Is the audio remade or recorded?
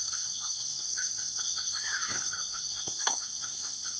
remade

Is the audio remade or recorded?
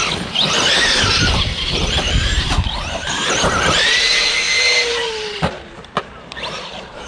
remade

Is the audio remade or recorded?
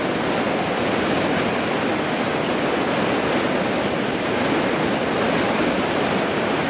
recorded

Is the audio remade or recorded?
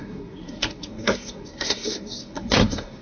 remade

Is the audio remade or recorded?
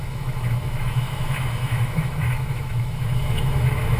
remade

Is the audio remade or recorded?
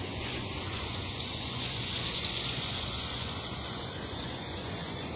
remade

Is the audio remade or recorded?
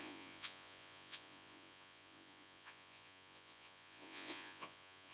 remade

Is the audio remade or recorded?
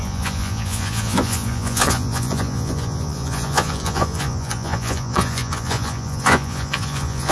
remade